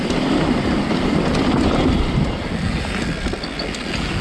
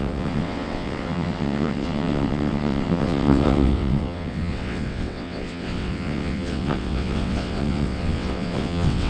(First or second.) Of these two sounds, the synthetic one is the second